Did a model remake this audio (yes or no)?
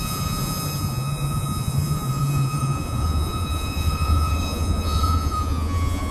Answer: yes